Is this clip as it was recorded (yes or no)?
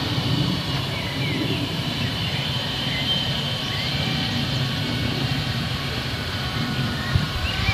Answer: no